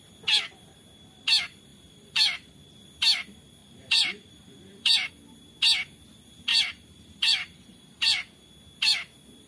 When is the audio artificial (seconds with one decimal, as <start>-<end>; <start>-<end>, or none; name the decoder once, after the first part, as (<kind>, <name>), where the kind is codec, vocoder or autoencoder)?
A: 1.7-2.5 (vocoder, BigVGAN v2); 3.6-5.1; 6.5-8.5

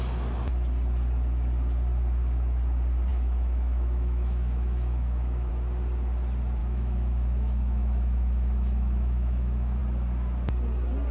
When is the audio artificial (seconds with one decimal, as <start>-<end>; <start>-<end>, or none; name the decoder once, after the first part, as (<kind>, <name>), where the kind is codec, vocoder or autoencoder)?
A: 3.1-5.5 (autoencoder, DAC-VAE); 6.6-9.8